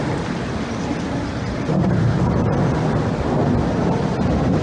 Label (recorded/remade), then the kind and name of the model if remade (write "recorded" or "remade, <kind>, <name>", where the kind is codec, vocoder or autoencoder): remade, vocoder, BigVGAN v2